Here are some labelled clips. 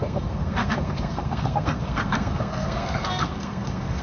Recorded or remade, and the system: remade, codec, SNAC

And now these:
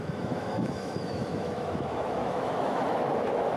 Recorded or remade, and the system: remade, autoencoder, DAC-VAE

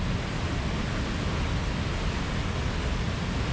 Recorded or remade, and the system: recorded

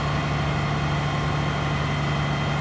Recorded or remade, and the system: recorded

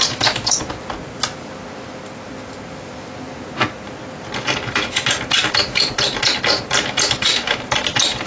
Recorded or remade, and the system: recorded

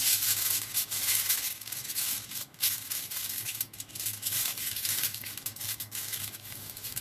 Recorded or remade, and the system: remade, codec, DAC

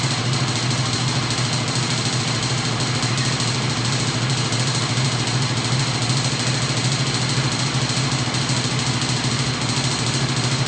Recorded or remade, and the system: recorded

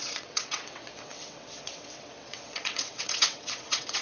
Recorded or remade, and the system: remade, vocoder, WaveNeXt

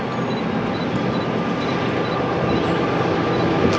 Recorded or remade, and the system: recorded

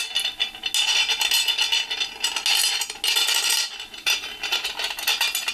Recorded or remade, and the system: recorded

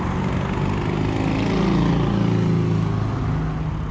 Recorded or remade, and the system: recorded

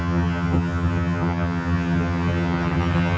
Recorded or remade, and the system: remade, vocoder, HiFi-GAN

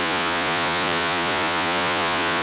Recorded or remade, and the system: remade, vocoder, Vocos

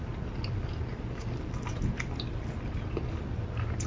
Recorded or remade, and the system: recorded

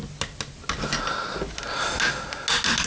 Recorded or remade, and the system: recorded